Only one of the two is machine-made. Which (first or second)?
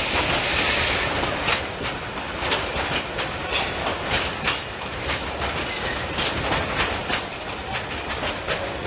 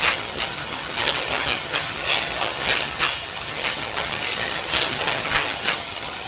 second